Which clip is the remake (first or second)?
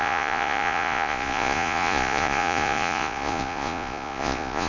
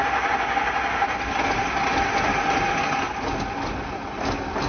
first